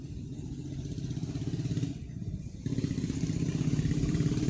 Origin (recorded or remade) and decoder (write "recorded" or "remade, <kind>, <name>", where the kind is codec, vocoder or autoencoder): remade, vocoder, BigVGAN v2